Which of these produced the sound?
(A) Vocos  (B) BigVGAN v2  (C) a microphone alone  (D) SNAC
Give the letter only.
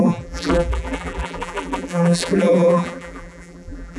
B